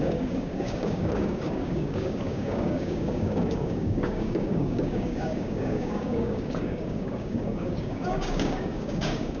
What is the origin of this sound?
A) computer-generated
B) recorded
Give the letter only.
A